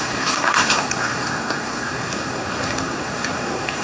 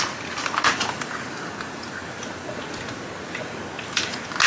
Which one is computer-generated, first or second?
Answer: first